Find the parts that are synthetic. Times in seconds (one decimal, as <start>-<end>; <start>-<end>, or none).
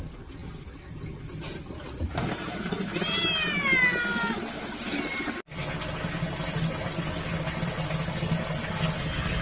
none